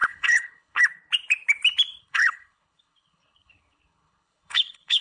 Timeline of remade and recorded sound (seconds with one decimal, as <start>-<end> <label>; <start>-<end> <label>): 0.0-0.8 remade; 0.8-2.0 recorded; 2.0-5.0 remade